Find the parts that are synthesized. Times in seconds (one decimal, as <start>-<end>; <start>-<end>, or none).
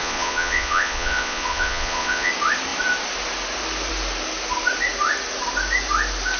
0.0-2.3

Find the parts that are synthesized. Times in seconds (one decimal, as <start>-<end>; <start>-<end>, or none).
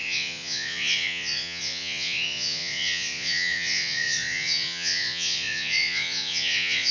0.0-6.9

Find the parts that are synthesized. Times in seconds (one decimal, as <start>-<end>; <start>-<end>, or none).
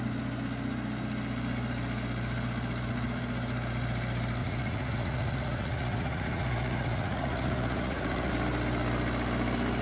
4.4-8.3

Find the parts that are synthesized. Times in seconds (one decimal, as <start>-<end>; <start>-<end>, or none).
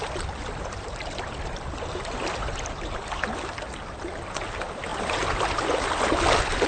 none